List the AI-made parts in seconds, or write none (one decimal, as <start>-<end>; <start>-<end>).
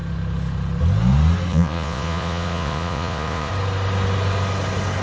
1.5-3.5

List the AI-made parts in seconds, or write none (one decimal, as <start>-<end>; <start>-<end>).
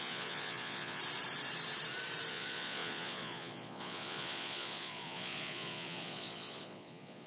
0.0-1.0; 2.3-7.3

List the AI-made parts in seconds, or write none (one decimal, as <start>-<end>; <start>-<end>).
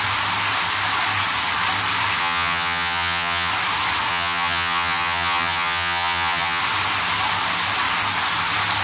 2.2-3.5; 4.1-6.6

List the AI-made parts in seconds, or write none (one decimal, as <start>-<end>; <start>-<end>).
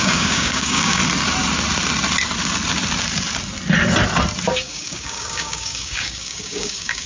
0.0-1.0; 4.5-7.1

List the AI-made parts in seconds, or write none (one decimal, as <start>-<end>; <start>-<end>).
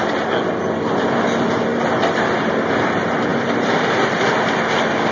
3.3-4.3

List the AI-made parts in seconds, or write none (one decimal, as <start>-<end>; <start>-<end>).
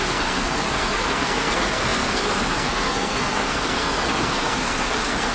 0.0-5.3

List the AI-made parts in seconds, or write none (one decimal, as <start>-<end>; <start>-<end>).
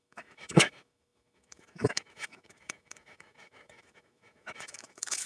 0.0-5.3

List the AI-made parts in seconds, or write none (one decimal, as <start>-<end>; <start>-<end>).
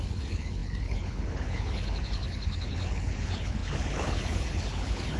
0.0-5.2